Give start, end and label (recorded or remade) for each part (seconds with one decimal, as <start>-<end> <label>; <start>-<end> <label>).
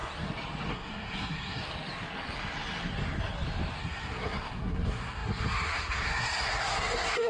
0.0-0.7 recorded; 0.7-1.6 remade; 1.6-3.8 recorded; 3.8-7.3 remade